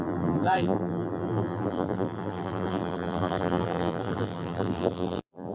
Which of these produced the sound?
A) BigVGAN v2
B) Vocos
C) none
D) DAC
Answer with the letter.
A